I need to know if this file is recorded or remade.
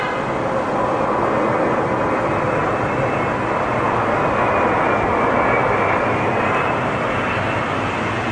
recorded